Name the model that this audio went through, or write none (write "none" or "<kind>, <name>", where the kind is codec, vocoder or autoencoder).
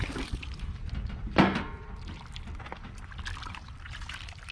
vocoder, BigVGAN v2